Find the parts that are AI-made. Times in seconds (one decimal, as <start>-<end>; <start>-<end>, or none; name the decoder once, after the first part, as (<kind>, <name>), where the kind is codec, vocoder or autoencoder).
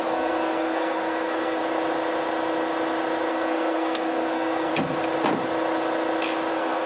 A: 0.0-1.6 (codec, SNAC); 3.3-4.7; 6.5-6.9